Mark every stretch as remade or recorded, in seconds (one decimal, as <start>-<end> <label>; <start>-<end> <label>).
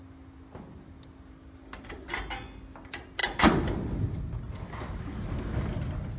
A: 0.0-6.2 recorded